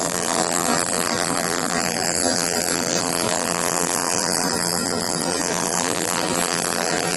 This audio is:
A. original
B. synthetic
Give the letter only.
B